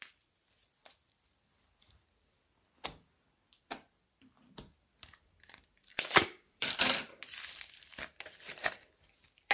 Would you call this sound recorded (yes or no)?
no